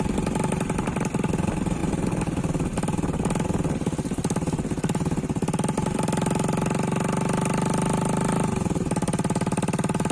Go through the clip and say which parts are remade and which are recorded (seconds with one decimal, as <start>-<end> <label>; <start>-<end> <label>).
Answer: 0.0-10.1 recorded